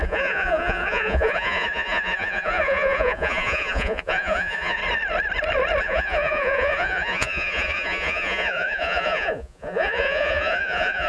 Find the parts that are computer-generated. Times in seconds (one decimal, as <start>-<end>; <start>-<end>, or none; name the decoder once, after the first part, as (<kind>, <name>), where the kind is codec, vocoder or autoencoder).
0.0-4.8 (vocoder, Vocos); 5.8-11.1